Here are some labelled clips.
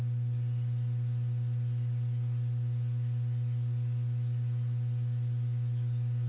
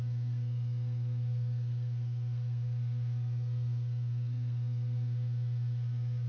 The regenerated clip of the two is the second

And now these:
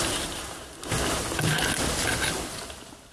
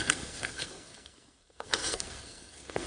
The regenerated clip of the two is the second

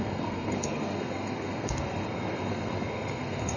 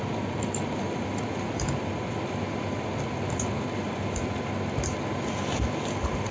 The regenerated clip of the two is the first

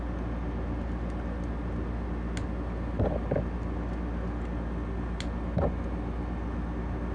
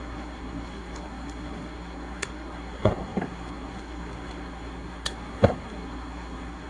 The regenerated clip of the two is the second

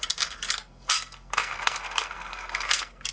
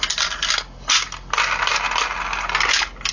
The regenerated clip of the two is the first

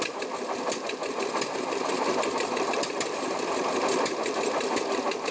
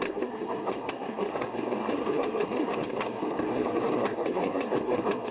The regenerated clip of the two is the second